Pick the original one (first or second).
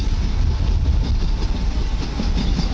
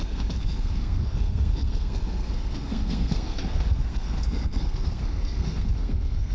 first